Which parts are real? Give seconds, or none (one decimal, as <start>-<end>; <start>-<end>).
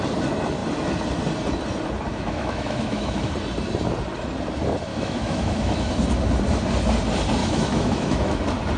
0.0-2.1; 3.3-4.9; 5.9-7.4; 8.4-8.8